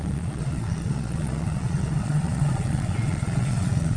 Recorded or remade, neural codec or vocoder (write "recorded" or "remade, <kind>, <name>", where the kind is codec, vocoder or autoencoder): remade, vocoder, Vocos